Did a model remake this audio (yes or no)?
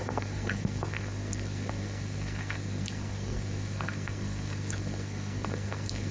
yes